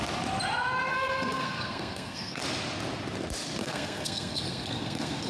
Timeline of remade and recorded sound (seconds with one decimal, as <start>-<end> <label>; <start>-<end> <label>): 0.0-0.9 recorded; 0.9-2.4 remade; 2.4-3.6 recorded; 3.6-5.3 remade

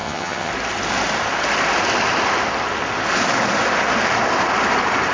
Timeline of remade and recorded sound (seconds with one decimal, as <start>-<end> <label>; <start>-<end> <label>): 0.0-0.5 remade; 0.5-5.1 recorded

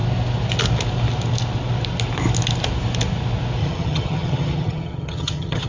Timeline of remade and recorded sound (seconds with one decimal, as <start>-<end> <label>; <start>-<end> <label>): 0.0-3.6 recorded; 3.6-5.7 remade

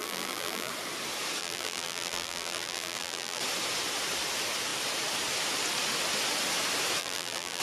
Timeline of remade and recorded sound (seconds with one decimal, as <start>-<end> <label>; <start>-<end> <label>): 0.0-0.7 remade; 0.7-1.4 recorded; 1.4-3.4 remade; 3.4-7.0 recorded; 7.0-7.6 remade

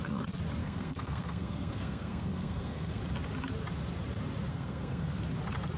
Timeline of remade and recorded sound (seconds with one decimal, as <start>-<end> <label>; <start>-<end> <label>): 0.0-0.6 recorded; 0.6-3.0 remade; 3.0-4.5 recorded; 4.5-5.2 remade; 5.2-5.8 recorded

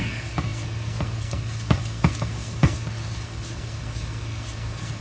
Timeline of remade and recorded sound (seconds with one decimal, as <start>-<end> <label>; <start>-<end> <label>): 0.0-5.0 remade